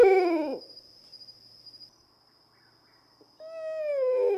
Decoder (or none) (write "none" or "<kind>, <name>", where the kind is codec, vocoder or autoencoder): none